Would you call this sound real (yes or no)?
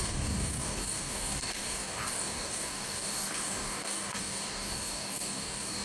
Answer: no